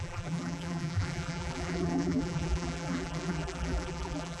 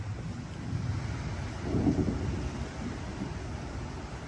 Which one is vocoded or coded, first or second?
first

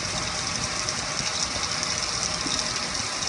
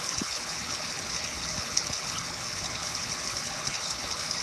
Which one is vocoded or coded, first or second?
second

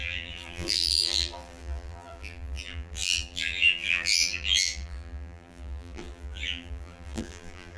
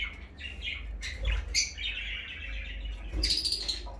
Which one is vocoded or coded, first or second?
first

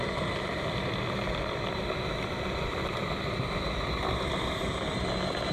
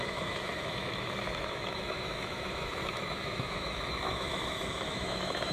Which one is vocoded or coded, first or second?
second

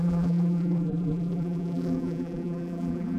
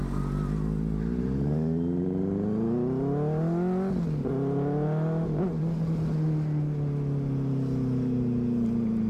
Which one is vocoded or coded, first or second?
first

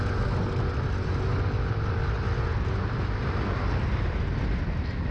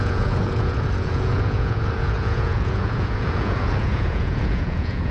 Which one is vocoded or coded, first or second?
second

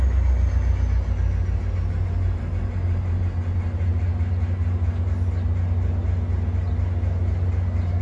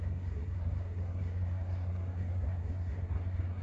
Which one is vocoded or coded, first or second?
second